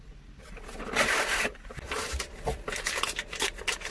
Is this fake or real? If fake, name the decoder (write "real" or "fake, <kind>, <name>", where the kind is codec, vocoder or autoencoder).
real